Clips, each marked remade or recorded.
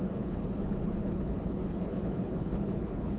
remade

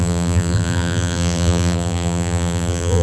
remade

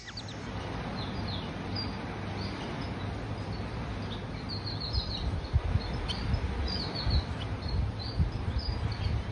recorded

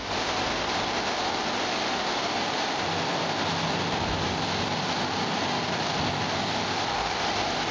recorded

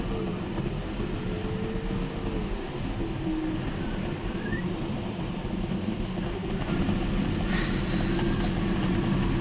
recorded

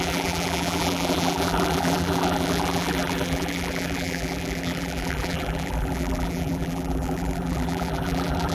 remade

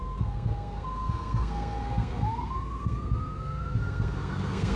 remade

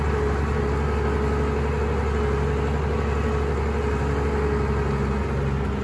recorded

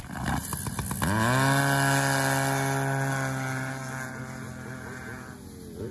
recorded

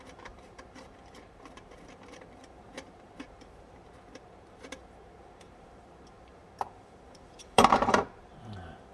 remade